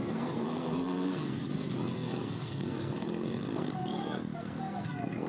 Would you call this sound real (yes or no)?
no